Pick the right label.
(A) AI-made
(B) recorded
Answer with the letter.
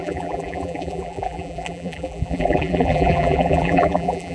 A